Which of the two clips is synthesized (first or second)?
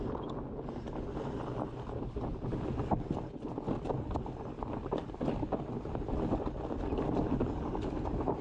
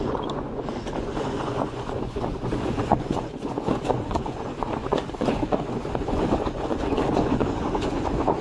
second